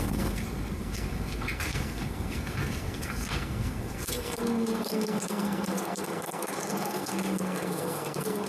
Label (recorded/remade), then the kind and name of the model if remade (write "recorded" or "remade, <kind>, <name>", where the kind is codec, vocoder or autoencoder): remade, codec, SNAC